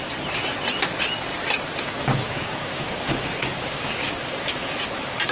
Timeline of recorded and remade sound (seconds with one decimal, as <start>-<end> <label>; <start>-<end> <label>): 0.0-1.7 recorded; 1.7-4.7 remade; 4.7-5.3 recorded

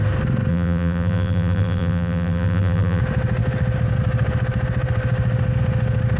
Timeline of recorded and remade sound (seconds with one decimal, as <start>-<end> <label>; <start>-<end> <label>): 0.0-0.5 recorded; 0.5-3.0 remade; 3.0-6.2 recorded

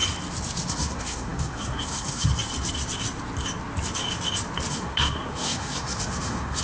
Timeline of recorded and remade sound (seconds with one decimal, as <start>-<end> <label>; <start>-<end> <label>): 0.0-0.7 recorded; 0.7-2.3 remade; 2.3-4.7 recorded; 4.7-6.6 remade

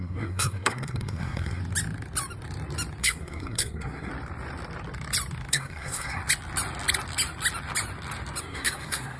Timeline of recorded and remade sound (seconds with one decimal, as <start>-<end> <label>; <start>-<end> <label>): 0.0-1.6 remade; 1.6-3.0 recorded; 3.0-4.1 remade; 4.1-5.5 recorded; 5.5-6.2 remade; 6.2-8.4 recorded; 8.4-9.2 remade